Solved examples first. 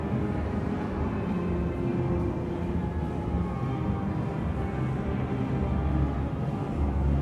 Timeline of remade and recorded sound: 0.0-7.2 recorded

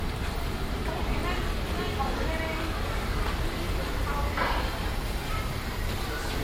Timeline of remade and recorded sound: 0.0-1.2 remade; 1.2-4.7 recorded; 4.7-6.4 remade

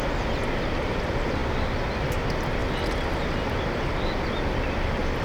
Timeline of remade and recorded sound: 0.0-5.2 recorded

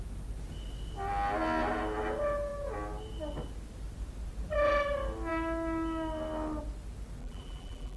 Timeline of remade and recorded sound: 0.0-7.2 recorded; 7.2-8.0 remade

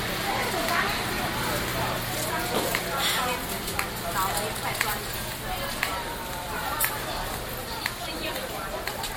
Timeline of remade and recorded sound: 0.0-5.9 recorded; 5.9-9.2 remade

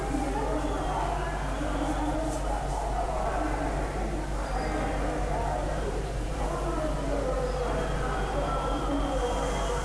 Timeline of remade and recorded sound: 0.0-5.6 recorded; 5.6-6.4 remade; 6.4-9.8 recorded

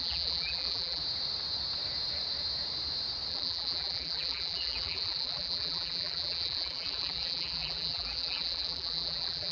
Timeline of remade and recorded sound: 0.0-1.0 remade; 1.0-3.3 recorded; 3.3-9.5 remade